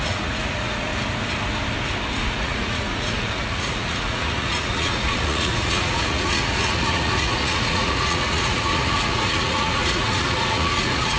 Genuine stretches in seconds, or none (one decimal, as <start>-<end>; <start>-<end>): 0.9-2.3